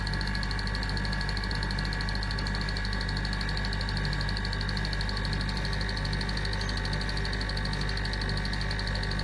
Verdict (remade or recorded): recorded